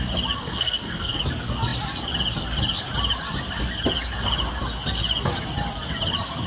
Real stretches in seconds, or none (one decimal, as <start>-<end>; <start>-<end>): 0.0-0.4; 1.2-6.5